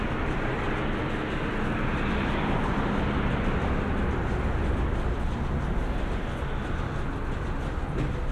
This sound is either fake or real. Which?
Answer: real